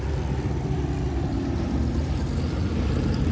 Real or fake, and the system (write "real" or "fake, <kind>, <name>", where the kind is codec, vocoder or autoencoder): real